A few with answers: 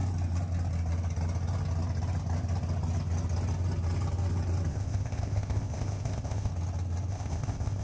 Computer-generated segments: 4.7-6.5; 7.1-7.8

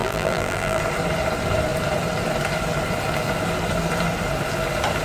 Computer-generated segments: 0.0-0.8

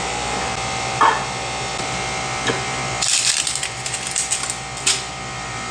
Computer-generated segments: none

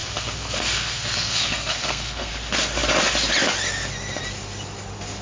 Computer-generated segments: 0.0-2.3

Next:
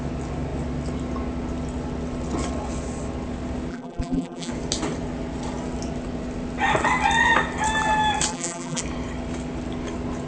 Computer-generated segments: 3.7-4.5; 8.3-8.8